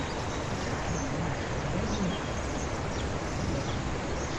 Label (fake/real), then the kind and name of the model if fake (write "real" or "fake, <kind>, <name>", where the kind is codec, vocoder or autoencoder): real